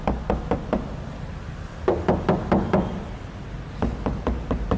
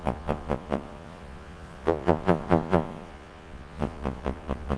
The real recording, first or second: first